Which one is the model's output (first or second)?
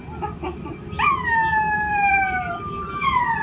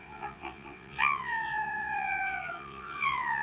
second